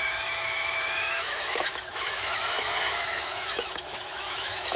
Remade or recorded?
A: remade